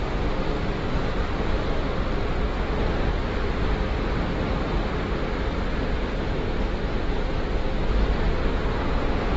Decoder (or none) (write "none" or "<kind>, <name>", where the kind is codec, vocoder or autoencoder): none